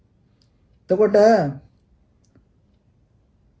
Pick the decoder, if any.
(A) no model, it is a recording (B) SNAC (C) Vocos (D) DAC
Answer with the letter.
A